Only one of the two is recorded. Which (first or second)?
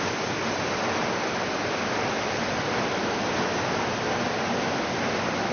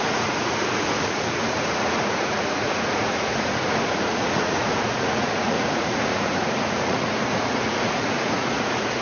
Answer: first